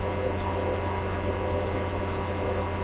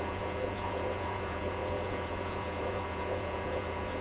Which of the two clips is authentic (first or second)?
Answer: first